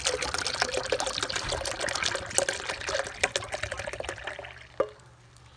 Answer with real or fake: real